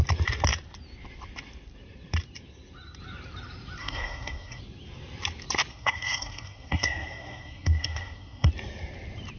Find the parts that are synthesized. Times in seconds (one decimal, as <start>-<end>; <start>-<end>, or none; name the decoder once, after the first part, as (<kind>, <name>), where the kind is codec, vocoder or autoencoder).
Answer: 3.8-4.6 (codec, SNAC); 5.7-8.5

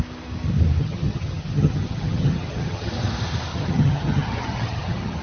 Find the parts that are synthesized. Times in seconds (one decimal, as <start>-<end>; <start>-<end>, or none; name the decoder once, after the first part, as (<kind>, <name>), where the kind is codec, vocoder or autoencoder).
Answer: 0.8-2.9 (vocoder, HiFi-GAN); 3.5-5.2

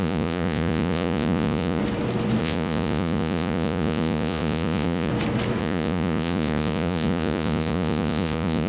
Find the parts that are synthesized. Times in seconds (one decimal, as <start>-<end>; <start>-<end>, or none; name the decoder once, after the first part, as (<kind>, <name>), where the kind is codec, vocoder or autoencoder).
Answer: 0.0-1.8 (vocoder, Vocos); 2.4-5.1; 5.6-8.7

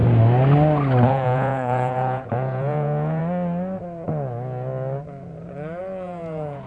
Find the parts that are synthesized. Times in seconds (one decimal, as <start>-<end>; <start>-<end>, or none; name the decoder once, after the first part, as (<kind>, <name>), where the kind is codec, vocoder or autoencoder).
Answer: 1.1-3.2 (vocoder, Vocos); 5.8-6.7

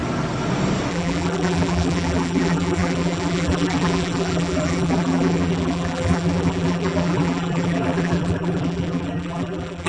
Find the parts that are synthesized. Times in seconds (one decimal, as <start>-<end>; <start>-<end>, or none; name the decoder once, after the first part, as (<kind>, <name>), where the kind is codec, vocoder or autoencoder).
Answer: 0.9-9.9 (vocoder, BigVGAN v2)

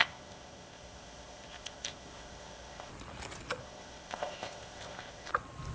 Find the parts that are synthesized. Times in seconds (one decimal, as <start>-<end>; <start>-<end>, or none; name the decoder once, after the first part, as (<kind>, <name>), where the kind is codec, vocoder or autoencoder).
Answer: 0.0-2.9 (codec, ZipCodec); 3.6-5.3

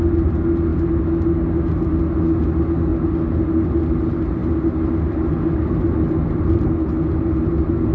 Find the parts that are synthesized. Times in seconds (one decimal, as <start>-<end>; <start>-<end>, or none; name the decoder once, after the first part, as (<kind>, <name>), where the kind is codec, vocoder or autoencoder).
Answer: none

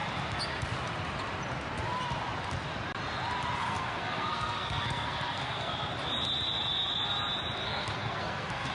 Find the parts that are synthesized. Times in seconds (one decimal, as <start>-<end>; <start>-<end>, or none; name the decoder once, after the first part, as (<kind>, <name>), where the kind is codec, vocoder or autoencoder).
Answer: 3.6-5.7 (codec, SNAC); 7.6-8.7